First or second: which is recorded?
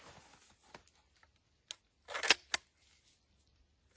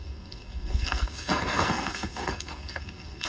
first